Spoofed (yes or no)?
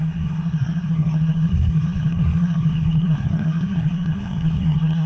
yes